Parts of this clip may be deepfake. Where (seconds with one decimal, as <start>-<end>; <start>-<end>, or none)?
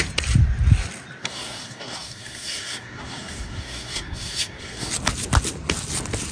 1.2-4.9